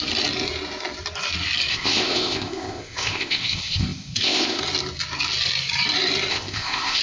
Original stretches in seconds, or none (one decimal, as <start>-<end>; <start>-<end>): 0.0-1.7; 4.6-6.3